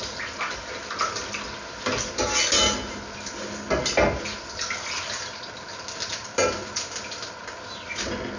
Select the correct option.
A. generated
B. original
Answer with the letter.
B